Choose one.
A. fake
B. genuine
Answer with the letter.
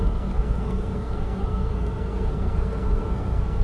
A